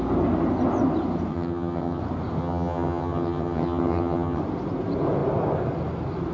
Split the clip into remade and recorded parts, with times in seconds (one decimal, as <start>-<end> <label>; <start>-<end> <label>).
0.0-1.3 recorded; 1.3-2.0 remade; 2.0-2.4 recorded; 2.4-4.4 remade; 4.4-6.3 recorded